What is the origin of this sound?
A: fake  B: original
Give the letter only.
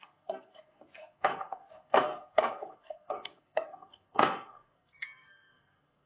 A